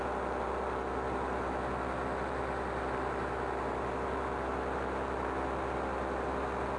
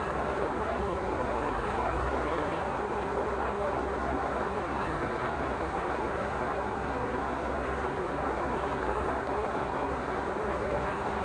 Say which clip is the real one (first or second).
first